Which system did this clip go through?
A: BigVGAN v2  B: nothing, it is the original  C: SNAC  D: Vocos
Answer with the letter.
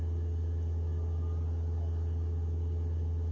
B